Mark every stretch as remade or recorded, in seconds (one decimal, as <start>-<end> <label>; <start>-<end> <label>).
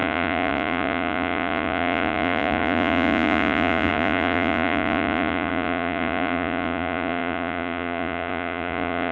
0.0-9.1 remade